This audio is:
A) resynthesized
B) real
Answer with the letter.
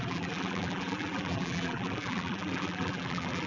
A